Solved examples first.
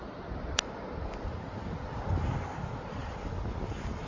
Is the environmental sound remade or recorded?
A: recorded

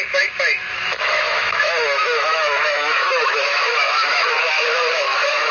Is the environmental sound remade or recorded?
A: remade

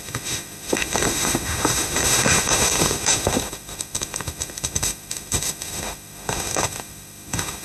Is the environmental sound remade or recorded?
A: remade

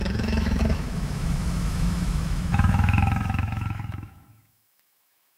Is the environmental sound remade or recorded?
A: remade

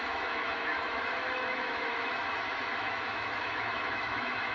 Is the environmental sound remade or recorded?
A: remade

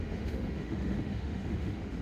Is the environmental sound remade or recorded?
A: remade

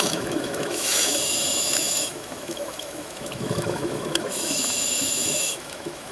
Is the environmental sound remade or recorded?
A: remade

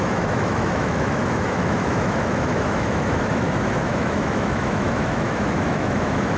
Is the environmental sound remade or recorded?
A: remade